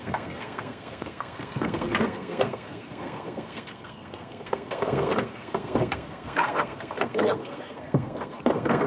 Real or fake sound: fake